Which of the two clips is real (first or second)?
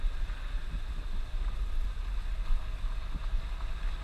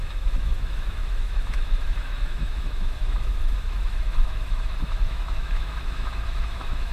first